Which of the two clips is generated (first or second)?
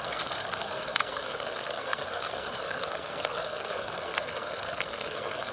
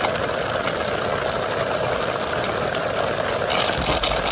first